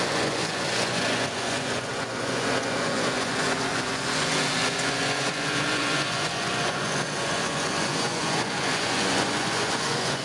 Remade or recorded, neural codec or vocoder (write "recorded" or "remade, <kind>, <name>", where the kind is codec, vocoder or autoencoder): remade, vocoder, Vocos